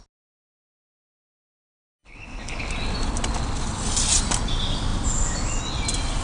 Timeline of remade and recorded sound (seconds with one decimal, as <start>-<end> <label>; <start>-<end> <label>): 0.0-2.0 recorded; 2.0-2.7 remade; 2.7-6.2 recorded